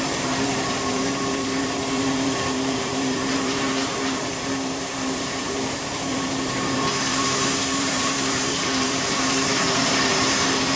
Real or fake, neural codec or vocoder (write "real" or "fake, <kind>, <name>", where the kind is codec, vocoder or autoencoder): fake, vocoder, BigVGAN v2